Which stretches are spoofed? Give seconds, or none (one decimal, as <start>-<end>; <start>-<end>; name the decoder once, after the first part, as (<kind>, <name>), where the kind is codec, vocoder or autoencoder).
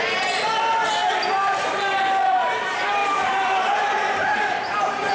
3.0-5.1 (vocoder, BigVGAN v2)